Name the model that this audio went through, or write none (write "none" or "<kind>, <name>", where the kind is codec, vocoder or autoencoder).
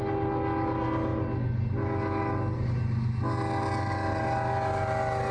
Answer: none